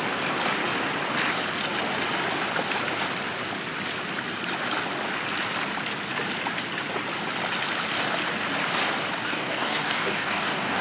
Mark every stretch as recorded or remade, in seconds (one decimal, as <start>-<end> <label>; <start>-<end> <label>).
0.0-9.2 recorded; 9.2-10.8 remade